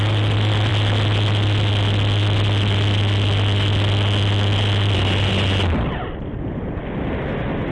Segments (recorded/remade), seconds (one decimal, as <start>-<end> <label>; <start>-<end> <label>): 0.0-7.7 recorded